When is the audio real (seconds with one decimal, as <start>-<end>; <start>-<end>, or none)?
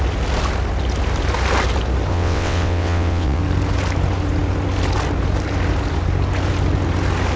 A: 0.0-2.1; 3.4-7.4